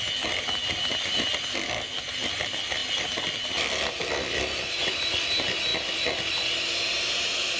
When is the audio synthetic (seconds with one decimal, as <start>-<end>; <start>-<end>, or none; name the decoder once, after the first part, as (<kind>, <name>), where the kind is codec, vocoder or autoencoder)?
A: none